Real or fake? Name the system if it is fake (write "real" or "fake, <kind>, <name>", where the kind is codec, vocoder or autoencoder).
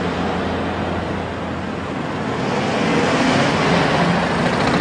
real